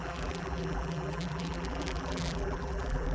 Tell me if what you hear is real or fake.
fake